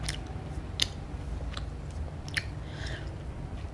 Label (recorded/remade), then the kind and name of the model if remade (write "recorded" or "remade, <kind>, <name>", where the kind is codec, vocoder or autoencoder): recorded